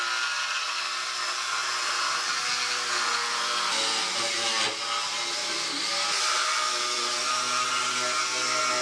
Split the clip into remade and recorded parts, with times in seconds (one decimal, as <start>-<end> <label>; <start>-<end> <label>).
0.0-5.4 recorded; 5.4-7.4 remade; 7.4-8.8 recorded